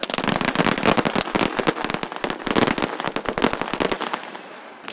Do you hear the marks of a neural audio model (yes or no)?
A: no